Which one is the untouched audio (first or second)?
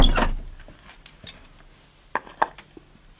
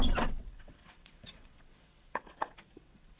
first